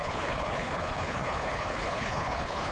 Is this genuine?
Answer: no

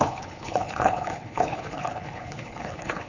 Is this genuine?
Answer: no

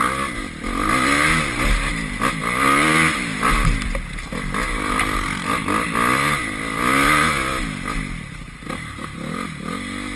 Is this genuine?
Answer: yes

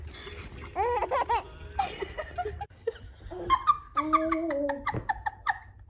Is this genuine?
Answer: yes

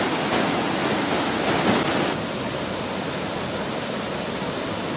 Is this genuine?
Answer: yes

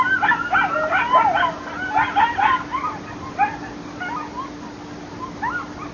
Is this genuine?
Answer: yes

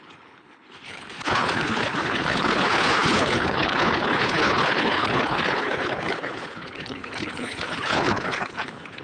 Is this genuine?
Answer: no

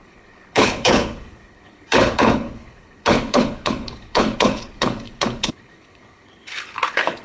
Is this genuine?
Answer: no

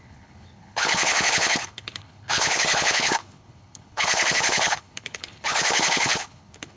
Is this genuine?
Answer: no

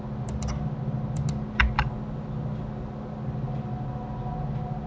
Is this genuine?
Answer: yes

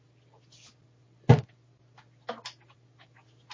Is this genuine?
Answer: yes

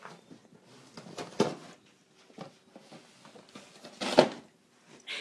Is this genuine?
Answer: yes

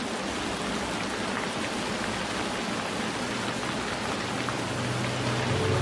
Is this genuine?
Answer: yes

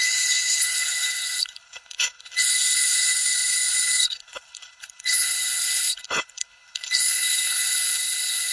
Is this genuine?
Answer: no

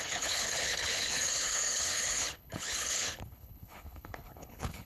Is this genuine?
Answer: no